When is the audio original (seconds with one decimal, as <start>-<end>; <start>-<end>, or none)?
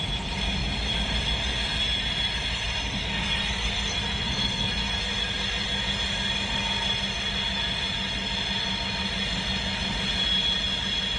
0.0-3.0; 5.0-11.2